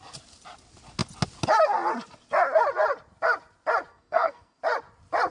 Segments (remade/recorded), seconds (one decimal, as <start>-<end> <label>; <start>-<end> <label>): 0.0-3.9 recorded; 3.9-4.6 remade; 4.6-5.3 recorded